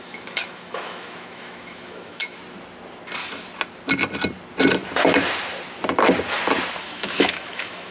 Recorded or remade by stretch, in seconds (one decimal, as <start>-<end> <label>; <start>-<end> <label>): 0.0-2.4 remade; 2.4-6.8 recorded; 6.8-7.9 remade